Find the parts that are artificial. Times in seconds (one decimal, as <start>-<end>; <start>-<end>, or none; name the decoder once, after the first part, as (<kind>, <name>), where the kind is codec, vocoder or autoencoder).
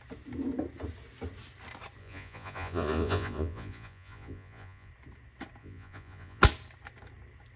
2.0-4.9 (vocoder, Vocos); 5.6-6.4